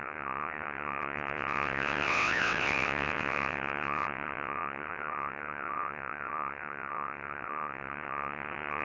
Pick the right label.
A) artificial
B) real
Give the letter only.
A